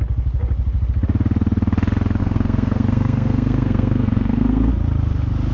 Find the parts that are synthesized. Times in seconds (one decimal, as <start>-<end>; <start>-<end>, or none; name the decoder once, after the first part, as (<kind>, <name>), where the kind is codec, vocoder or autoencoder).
2.2-4.7 (codec, SNAC)